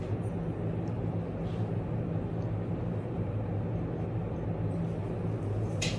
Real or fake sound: real